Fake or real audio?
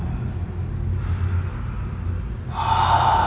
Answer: real